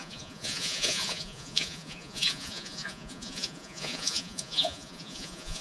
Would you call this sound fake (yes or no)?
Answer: yes